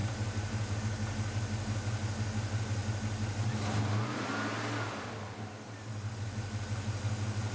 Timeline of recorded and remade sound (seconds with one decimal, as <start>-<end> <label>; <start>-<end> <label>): 0.0-0.8 remade; 0.8-7.5 recorded